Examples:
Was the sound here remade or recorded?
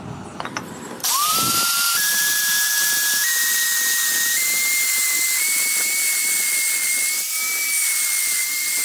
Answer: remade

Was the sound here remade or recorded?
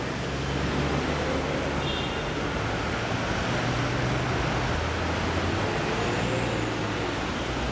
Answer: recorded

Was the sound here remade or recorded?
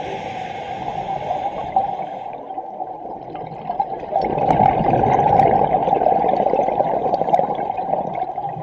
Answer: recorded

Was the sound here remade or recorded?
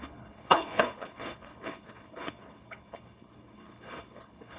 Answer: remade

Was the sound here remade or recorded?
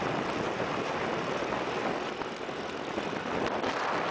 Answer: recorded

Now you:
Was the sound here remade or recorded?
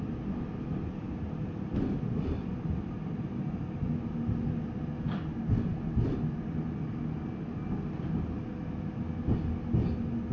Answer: recorded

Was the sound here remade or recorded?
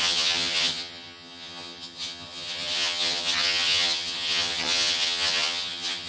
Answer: remade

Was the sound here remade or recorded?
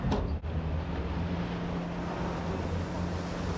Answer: recorded